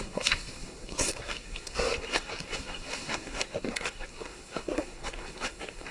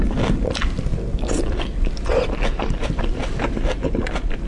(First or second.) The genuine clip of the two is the second